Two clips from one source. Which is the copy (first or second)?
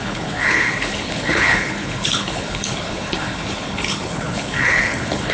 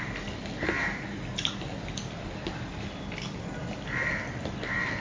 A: first